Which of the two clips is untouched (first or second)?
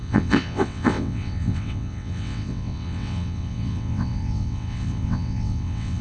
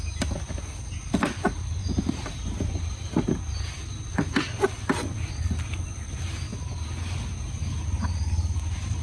second